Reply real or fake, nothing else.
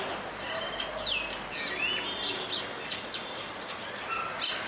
real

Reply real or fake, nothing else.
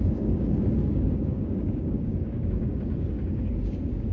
fake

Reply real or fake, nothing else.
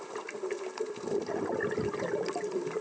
real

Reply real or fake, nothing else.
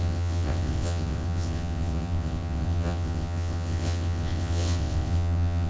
fake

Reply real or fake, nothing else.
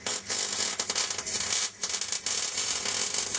real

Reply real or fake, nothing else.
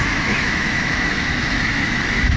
fake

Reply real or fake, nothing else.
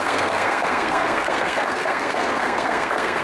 fake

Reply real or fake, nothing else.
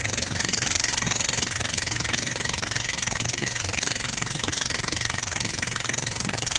fake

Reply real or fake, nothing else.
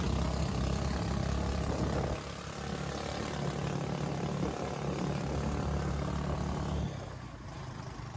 real